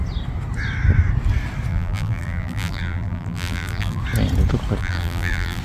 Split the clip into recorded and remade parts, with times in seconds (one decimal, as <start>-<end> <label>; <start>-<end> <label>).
0.0-1.7 recorded; 1.7-4.0 remade; 4.0-4.8 recorded; 4.8-5.6 remade